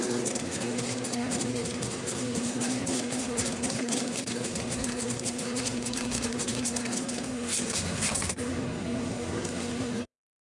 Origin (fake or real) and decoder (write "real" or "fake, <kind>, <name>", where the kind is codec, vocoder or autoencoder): fake, codec, SNAC